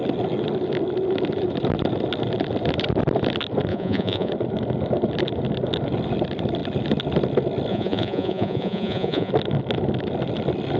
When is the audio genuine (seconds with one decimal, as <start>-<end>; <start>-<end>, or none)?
0.0-3.7; 4.3-7.7; 9.3-10.8